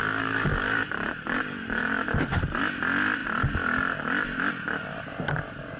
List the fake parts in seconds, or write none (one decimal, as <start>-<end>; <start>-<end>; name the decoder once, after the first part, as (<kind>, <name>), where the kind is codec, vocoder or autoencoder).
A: 0.0-2.6 (vocoder, BigVGAN v2)